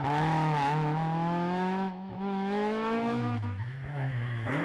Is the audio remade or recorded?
remade